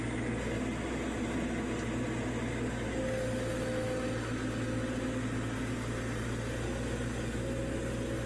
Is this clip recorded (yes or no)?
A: yes